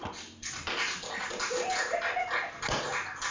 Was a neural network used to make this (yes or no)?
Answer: no